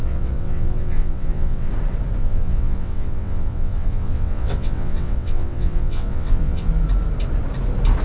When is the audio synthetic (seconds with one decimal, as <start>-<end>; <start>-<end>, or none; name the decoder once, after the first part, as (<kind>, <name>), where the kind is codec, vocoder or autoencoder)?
0.0-1.7 (vocoder, WaveNeXt); 2.2-6.7